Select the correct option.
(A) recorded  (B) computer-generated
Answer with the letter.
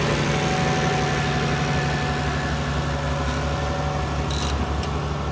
A